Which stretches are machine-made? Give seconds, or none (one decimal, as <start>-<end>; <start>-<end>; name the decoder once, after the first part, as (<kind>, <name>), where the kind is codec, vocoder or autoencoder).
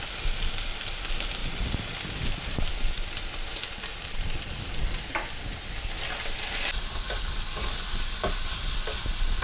3.9-4.8 (vocoder, BigVGAN v2)